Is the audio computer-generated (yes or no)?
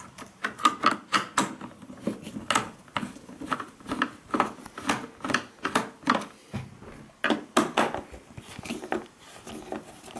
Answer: no